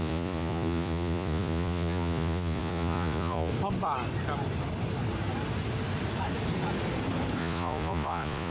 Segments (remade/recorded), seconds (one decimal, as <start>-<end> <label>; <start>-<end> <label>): 0.0-3.5 remade; 3.5-7.4 recorded; 7.4-8.5 remade